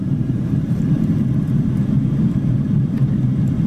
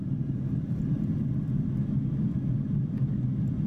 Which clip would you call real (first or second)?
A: second